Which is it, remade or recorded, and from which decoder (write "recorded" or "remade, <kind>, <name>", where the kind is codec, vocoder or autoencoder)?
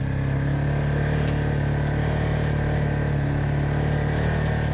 recorded